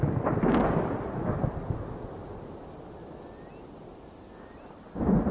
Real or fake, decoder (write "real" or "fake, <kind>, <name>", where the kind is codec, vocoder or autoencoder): real